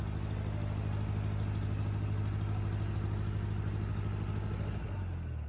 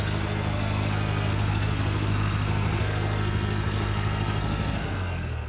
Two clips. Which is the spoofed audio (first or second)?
second